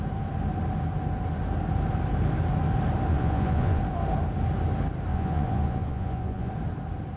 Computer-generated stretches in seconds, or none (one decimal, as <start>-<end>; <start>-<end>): 3.1-3.8; 5.1-6.5